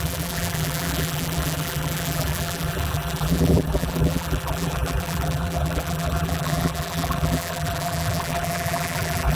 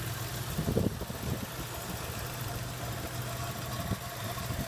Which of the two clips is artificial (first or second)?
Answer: first